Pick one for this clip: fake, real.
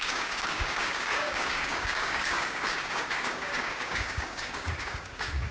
fake